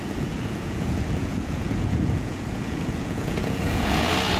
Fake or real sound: fake